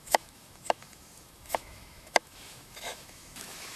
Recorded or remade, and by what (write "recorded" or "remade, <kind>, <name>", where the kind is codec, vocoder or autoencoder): remade, autoencoder, DAC-VAE